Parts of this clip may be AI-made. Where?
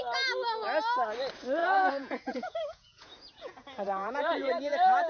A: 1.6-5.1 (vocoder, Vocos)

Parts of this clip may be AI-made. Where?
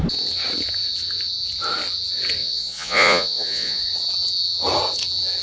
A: 2.4-3.8 (vocoder, Vocos)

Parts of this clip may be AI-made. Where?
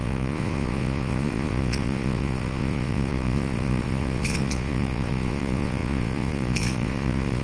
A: 0.0-7.4 (vocoder, Vocos)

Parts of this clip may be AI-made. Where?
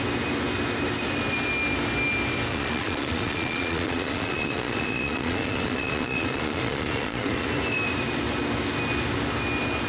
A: 2.5-7.5 (vocoder, Vocos)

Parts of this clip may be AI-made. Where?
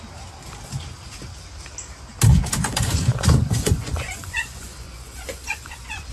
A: 2.3-6.1 (vocoder, Vocos)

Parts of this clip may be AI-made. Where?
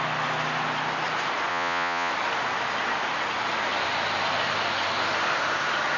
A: 1.5-2.1 (vocoder, Vocos)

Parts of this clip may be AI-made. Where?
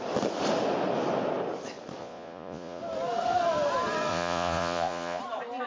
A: 2.0-2.8 (vocoder, Vocos); 4.1-5.2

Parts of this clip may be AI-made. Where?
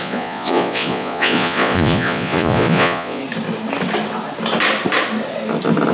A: 0.0-3.2 (vocoder, Vocos)